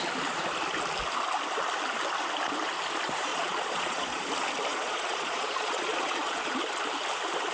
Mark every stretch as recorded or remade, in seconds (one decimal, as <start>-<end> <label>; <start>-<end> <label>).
0.0-3.3 recorded; 3.3-4.3 remade; 4.3-4.7 recorded; 4.7-6.6 remade; 6.6-7.5 recorded